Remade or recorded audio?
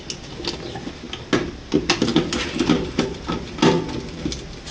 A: recorded